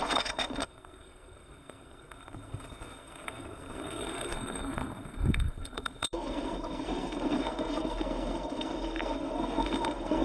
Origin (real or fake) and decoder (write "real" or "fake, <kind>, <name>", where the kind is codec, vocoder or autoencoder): fake, codec, SNAC